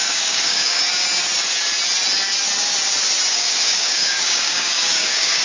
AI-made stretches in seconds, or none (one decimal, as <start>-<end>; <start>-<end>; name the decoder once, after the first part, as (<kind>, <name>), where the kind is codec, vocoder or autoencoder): 0.0-0.8 (codec, DAC); 3.3-5.4